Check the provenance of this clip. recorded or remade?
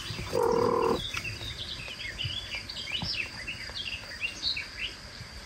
recorded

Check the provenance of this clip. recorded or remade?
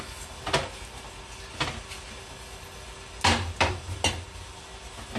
recorded